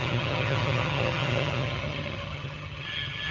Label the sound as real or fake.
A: fake